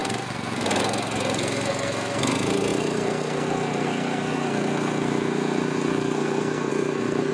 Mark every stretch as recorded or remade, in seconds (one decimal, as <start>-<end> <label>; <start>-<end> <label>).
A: 0.0-7.3 remade